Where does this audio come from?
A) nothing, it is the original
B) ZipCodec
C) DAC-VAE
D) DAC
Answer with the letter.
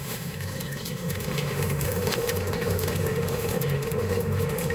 C